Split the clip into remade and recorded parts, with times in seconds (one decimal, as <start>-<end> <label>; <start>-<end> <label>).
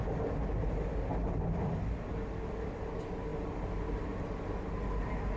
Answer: 0.0-5.4 recorded